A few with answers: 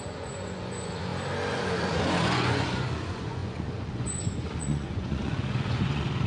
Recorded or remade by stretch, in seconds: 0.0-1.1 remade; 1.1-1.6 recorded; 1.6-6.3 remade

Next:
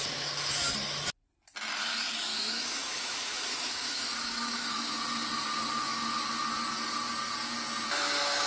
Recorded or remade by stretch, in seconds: 0.0-2.3 recorded; 2.3-4.9 remade; 4.9-8.5 recorded